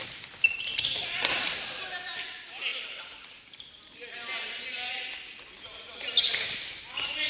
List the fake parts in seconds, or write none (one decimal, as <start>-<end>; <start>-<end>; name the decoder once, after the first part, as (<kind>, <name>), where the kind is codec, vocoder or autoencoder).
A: 0.7-1.5 (vocoder, BigVGAN v2)